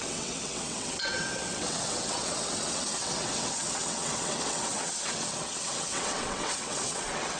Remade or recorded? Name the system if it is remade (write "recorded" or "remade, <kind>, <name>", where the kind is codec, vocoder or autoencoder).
remade, vocoder, WaveNeXt